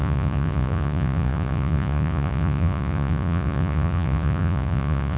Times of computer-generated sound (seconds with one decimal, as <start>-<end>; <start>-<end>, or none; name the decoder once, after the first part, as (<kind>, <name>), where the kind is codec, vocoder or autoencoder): 0.0-5.2 (vocoder, Vocos)